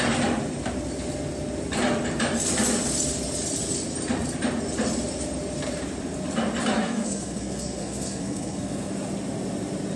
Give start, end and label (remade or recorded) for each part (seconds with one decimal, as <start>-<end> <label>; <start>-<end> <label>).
0.0-6.8 recorded; 6.8-8.9 remade; 8.9-10.0 recorded